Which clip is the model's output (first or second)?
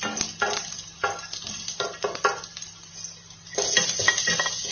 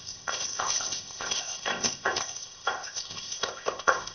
second